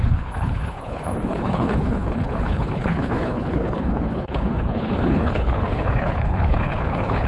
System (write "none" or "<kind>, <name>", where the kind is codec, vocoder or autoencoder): codec, HILCodec